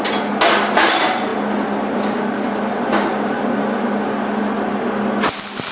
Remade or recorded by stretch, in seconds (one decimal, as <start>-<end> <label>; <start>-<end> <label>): 0.0-5.7 recorded

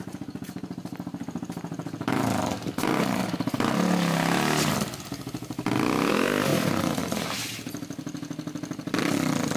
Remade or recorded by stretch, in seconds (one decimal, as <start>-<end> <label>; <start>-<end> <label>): 0.0-9.6 recorded

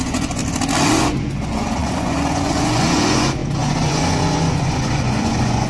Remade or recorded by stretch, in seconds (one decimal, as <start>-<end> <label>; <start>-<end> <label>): 0.0-0.4 remade; 0.4-1.0 recorded; 1.0-5.7 remade

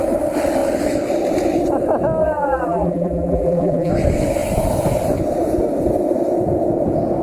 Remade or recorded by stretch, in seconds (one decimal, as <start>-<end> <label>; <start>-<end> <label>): 0.0-2.2 recorded; 2.2-3.9 remade; 3.9-7.2 recorded